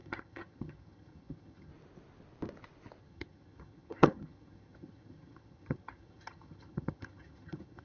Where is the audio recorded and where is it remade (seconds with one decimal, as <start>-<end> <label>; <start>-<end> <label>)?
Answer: 0.0-1.7 remade; 1.7-3.0 recorded; 3.0-7.8 remade